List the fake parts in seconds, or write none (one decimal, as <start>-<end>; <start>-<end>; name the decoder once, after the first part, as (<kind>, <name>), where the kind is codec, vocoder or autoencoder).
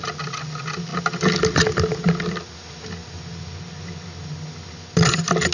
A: none